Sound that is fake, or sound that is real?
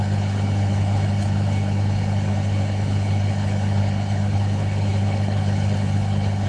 fake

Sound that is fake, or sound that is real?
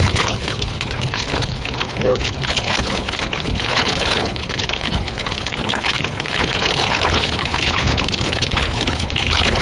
fake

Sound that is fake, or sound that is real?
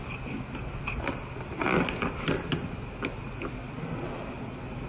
real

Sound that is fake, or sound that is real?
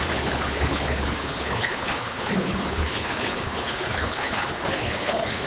fake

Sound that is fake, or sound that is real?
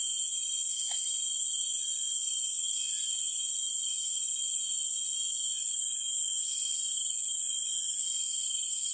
real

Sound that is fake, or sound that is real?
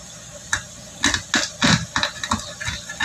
real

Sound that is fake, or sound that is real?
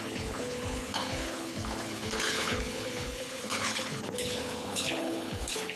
fake